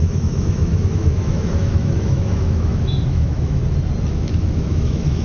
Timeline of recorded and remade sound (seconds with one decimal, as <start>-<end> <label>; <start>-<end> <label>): 0.0-3.6 remade; 3.6-4.1 recorded; 4.1-5.2 remade